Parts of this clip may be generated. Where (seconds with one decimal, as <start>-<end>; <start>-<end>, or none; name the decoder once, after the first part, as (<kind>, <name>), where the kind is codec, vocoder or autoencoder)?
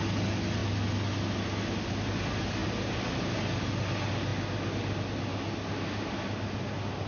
none